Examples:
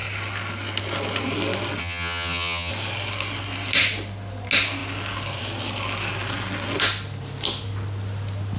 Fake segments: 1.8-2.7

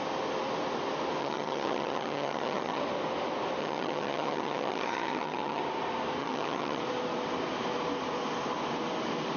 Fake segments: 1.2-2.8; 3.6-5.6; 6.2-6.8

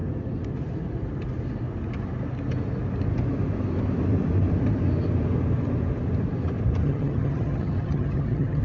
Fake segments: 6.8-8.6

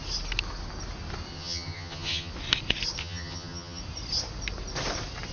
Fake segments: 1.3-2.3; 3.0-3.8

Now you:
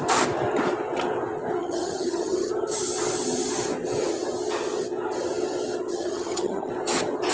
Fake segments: 1.6-2.5; 5.9-6.7

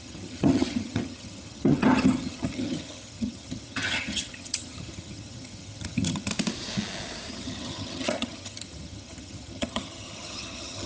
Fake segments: 0.0-6.3; 7.3-10.9

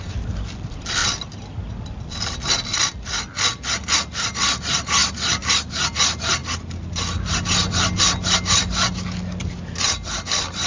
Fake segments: none

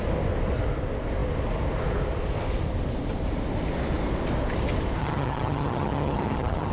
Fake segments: 5.0-6.7